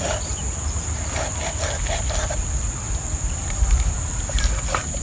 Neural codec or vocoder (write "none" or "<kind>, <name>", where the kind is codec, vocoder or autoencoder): none